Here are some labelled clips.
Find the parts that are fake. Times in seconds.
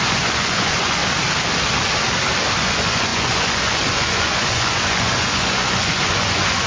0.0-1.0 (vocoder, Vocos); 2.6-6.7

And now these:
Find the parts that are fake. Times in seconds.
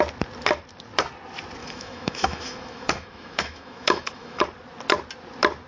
1.6-4.4 (autoencoder, DAC-VAE)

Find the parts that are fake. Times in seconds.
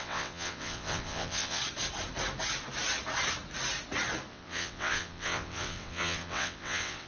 0.0-1.6 (vocoder, WaveNeXt); 4.3-7.1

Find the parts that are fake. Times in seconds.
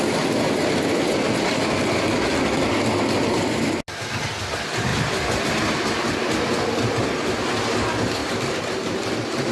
none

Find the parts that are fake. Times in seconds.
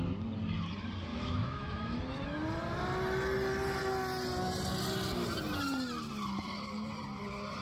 1.1-2.0 (autoencoder, DAC-VAE)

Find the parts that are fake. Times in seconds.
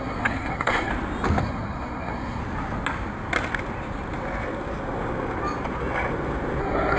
0.0-0.9 (codec, SNAC); 1.4-2.4; 6.6-7.0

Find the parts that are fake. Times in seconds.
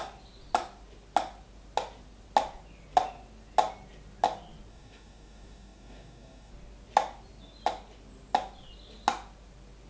4.7-6.5 (codec, DAC)